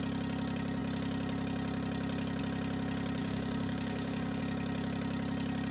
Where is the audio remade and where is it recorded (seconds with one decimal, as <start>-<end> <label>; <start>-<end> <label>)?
0.0-3.2 recorded; 3.2-4.4 remade; 4.4-5.7 recorded